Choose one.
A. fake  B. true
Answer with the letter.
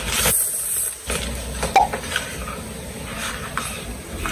B